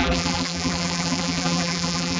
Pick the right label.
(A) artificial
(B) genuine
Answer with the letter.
A